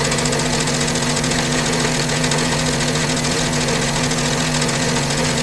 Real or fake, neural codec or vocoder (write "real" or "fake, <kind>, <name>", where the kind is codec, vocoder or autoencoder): fake, vocoder, Vocos